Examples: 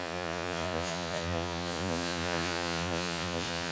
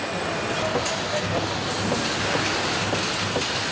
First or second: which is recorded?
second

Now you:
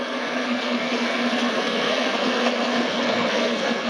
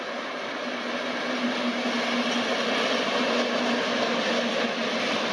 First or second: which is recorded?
second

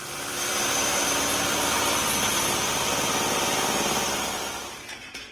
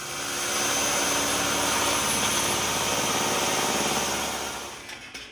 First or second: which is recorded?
second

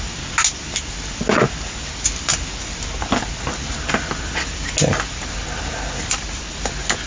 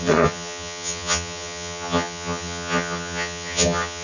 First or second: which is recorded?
first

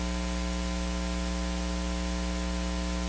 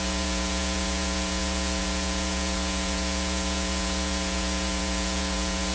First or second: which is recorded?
first